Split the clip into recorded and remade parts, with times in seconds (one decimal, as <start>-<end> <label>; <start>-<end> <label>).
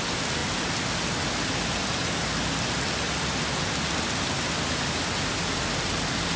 0.0-6.4 recorded